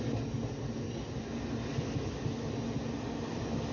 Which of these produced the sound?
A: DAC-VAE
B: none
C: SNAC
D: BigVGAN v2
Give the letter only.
B